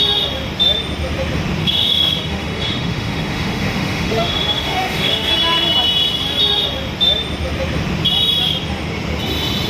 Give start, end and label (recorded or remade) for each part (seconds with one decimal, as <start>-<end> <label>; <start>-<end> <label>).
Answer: 0.0-1.6 recorded; 1.6-5.3 remade; 5.3-9.7 recorded